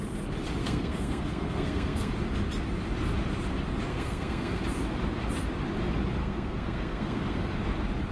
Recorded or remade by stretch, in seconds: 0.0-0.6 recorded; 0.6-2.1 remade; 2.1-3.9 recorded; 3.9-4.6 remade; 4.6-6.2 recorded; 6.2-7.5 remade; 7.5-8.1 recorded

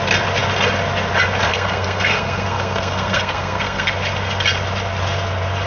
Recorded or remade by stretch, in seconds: 0.0-1.5 recorded; 1.5-3.9 remade; 3.9-5.7 recorded

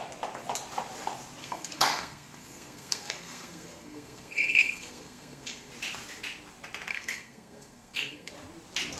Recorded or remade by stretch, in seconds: 0.0-1.4 recorded; 1.4-5.7 remade; 5.7-6.9 recorded; 6.9-8.3 remade; 8.3-9.0 recorded

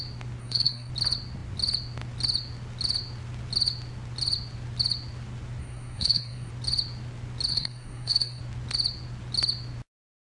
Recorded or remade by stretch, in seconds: 0.0-0.4 recorded; 0.4-0.9 remade; 0.9-5.6 recorded; 5.6-6.5 remade; 6.5-7.5 recorded; 7.5-8.4 remade; 8.4-10.3 recorded